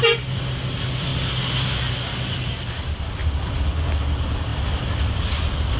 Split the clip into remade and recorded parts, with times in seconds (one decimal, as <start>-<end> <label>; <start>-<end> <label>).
0.0-5.8 recorded